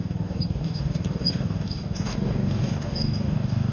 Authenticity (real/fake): fake